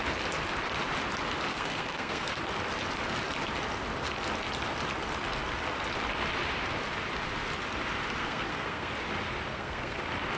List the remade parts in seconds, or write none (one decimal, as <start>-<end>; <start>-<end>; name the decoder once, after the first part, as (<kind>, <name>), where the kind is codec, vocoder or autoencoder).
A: 1.5-2.4 (codec, SNAC); 8.2-8.9; 9.5-10.0